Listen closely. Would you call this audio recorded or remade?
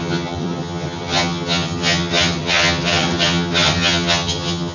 remade